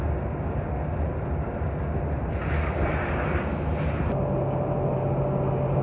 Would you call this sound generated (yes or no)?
no